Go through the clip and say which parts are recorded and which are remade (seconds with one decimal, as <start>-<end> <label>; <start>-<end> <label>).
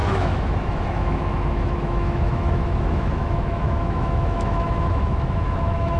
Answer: 0.0-6.0 remade